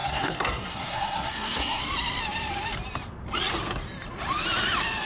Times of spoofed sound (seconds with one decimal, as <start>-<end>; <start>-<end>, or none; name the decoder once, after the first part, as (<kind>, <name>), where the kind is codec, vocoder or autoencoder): 0.0-1.8 (codec, SNAC)